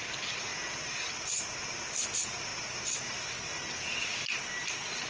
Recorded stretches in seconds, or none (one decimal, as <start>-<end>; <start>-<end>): 0.0-5.1